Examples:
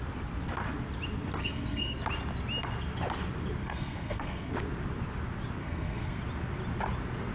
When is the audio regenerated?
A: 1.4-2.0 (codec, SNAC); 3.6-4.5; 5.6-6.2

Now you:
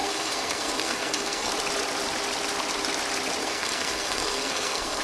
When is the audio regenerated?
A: 0.0-1.5 (codec, SNAC); 3.4-5.0

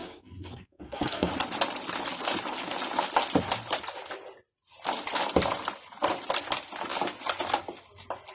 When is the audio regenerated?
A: 0.0-1.3 (codec, SNAC)

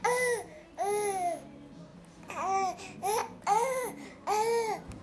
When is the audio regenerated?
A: none